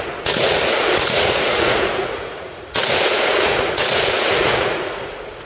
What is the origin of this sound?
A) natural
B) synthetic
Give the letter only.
B